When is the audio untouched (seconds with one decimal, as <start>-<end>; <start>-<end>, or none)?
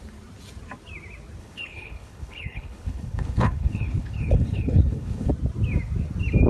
0.0-1.4; 5.3-6.5